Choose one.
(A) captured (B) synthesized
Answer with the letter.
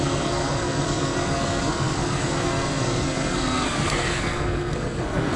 B